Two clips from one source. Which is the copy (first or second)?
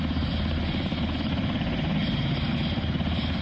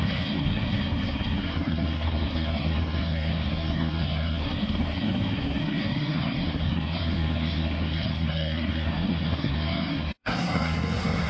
second